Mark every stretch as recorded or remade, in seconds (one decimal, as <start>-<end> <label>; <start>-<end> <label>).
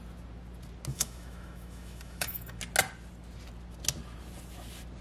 0.0-0.9 recorded; 0.9-2.6 remade; 2.6-5.0 recorded